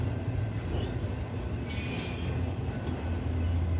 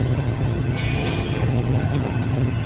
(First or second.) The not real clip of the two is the second